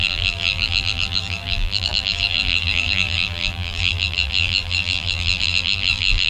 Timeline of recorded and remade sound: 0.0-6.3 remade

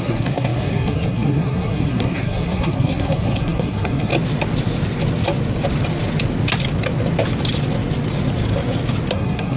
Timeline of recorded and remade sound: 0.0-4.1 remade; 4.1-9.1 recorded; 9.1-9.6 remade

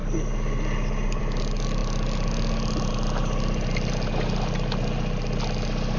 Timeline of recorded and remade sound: 0.0-6.0 recorded

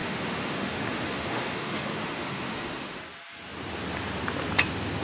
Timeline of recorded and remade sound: 0.0-3.0 remade; 3.0-5.0 recorded